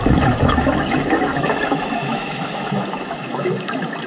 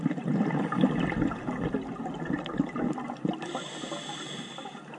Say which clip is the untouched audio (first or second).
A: second